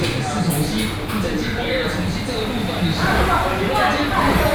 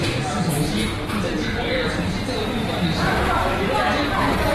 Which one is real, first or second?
first